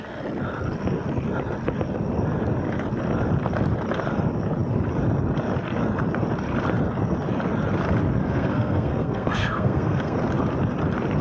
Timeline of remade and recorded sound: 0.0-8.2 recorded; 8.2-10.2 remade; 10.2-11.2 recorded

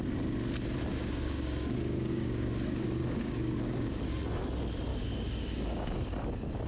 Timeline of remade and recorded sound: 0.0-0.9 recorded; 0.9-4.0 remade; 4.0-4.9 recorded; 4.9-6.1 remade; 6.1-6.7 recorded

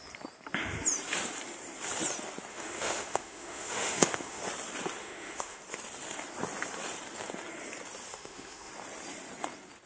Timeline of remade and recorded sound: 0.0-2.5 recorded; 2.5-4.4 remade; 4.4-5.0 recorded; 5.0-5.6 remade; 5.6-8.1 recorded; 8.1-8.7 remade; 8.7-9.9 recorded

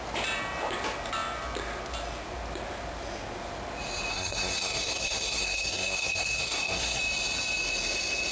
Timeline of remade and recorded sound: 0.0-4.1 recorded; 4.1-7.0 remade; 7.0-8.3 recorded

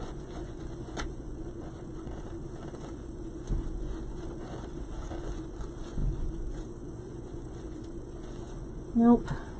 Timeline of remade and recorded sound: 0.0-2.1 remade; 2.1-2.7 recorded; 2.7-9.6 remade